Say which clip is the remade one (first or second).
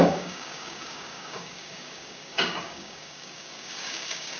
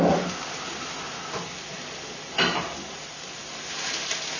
first